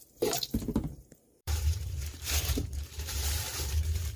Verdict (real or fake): fake